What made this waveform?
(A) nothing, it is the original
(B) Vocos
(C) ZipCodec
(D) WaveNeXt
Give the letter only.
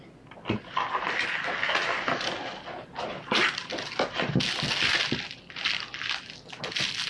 A